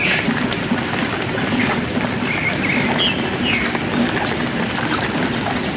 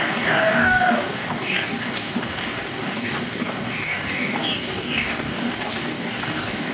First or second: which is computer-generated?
second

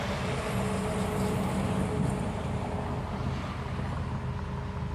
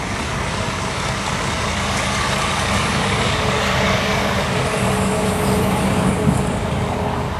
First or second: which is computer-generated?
second